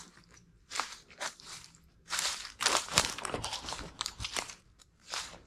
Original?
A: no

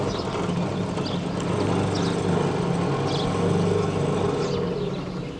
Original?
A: yes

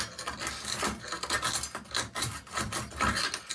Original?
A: yes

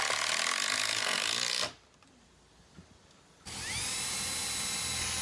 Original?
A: no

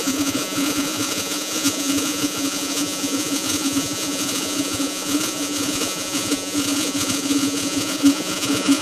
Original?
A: no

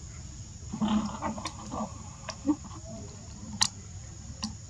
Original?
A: yes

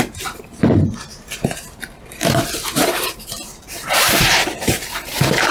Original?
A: no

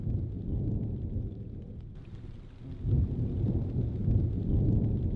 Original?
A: yes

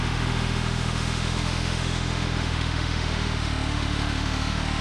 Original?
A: no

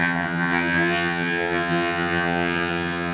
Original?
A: no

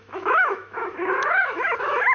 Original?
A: no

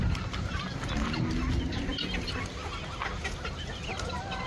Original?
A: yes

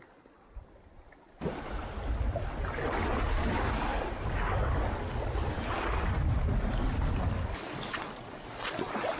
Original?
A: yes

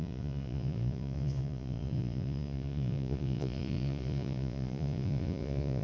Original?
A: no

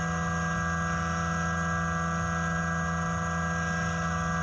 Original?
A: yes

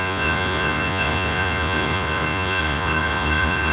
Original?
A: no